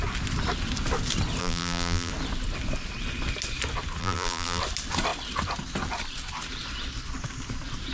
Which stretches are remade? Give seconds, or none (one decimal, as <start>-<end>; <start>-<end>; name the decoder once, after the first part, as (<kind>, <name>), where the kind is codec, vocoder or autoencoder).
1.4-2.1 (vocoder, BigVGAN v2); 4.0-4.6